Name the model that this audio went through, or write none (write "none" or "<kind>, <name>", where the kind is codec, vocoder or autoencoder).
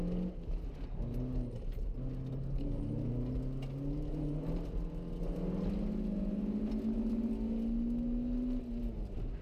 none